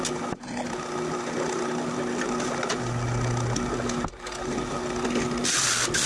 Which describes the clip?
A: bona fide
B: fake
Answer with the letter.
A